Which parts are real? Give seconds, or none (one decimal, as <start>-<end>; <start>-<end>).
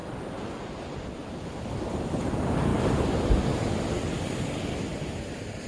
1.2-5.7